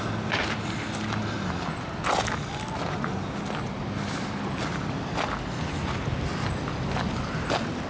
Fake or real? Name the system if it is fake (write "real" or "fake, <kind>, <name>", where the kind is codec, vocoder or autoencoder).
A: real